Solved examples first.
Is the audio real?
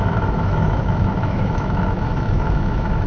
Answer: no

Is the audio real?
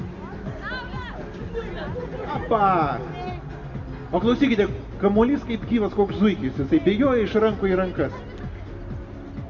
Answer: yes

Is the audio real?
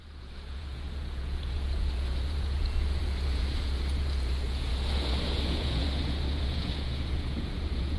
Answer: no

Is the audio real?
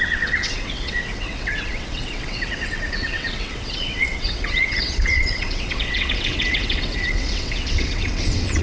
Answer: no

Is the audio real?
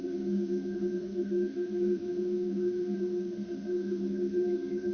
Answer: no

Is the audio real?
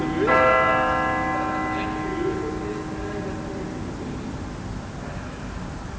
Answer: yes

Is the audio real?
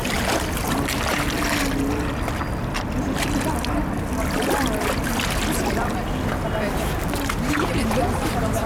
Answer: yes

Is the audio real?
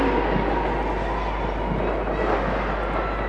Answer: yes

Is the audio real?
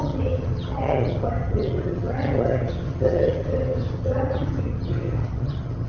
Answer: no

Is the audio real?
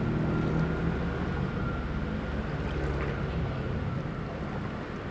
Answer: yes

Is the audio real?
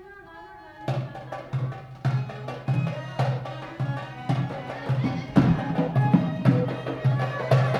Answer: yes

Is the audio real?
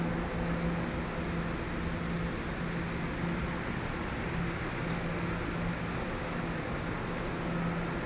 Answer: yes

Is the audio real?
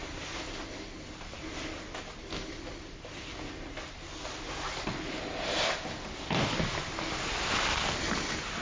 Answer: yes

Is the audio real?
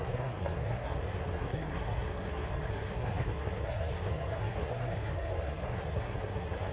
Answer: no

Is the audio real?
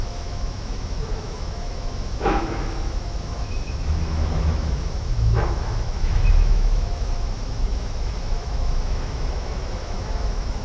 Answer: no